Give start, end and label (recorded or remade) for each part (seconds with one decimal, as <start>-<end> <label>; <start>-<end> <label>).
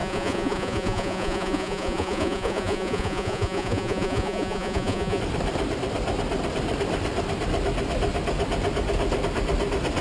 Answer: 0.0-5.2 remade; 5.2-10.0 recorded